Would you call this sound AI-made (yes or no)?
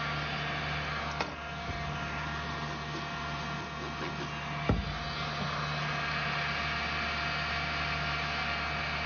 no